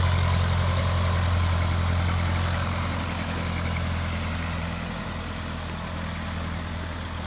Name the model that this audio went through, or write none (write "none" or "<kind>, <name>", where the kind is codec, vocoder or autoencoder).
none